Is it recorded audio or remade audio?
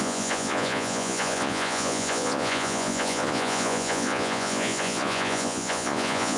remade